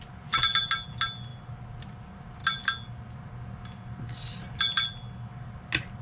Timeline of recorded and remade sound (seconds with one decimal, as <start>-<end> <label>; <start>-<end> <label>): 0.0-6.0 recorded